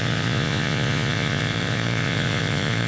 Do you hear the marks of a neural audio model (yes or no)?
yes